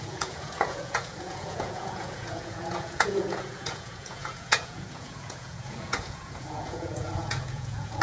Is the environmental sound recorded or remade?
remade